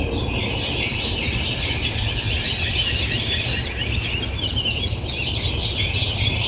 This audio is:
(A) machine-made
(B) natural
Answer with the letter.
B